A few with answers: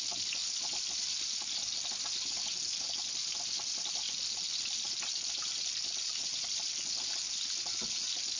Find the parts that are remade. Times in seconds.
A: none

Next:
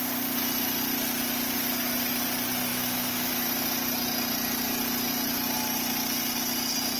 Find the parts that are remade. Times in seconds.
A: 2.7-3.3 (autoencoder, DAC-VAE)

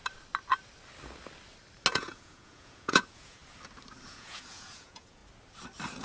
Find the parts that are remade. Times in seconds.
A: 1.9-3.4 (vocoder, Vocos); 4.1-5.2

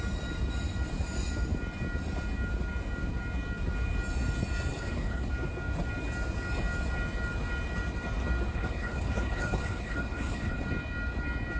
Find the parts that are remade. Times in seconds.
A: 4.7-5.3 (codec, HILCodec); 8.5-10.6